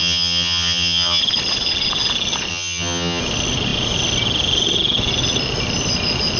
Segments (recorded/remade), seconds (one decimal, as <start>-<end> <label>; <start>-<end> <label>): 0.0-1.2 remade; 1.2-2.5 recorded; 2.5-3.2 remade; 3.2-6.4 recorded